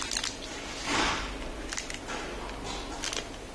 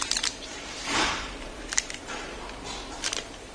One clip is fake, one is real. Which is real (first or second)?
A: first